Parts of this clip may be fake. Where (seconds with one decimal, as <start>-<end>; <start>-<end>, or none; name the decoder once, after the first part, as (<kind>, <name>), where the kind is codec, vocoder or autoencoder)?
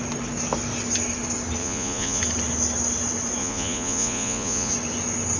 1.6-2.2 (vocoder, Vocos); 3.4-4.7